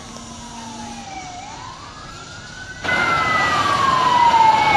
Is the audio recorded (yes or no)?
yes